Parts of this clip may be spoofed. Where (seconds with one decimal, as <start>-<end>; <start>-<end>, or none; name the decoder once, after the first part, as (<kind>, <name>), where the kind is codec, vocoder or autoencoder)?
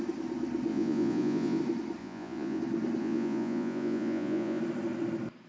0.7-1.6 (vocoder, Vocos); 2.0-2.6; 3.0-4.6